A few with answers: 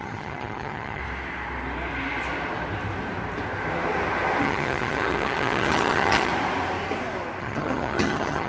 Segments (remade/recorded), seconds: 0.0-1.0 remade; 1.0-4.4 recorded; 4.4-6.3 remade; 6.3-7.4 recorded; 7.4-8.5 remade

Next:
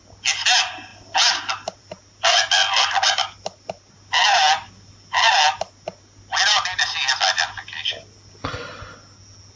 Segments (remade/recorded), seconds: 0.0-9.6 recorded

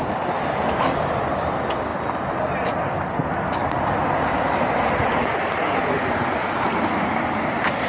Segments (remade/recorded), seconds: 0.0-7.9 recorded

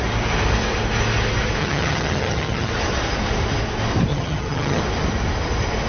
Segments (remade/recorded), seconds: 0.0-1.6 recorded; 1.6-2.7 remade; 2.7-4.1 recorded; 4.1-4.8 remade; 4.8-5.9 recorded

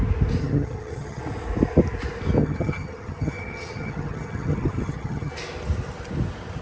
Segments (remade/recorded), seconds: 0.0-0.4 recorded; 0.4-1.2 remade; 1.2-2.4 recorded; 2.4-5.3 remade; 5.3-6.6 recorded

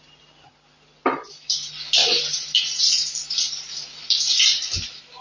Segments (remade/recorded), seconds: 0.0-5.2 recorded